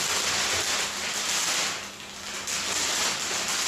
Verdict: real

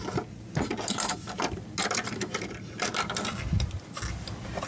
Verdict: real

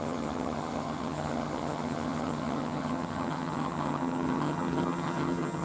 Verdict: fake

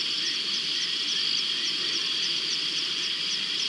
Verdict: real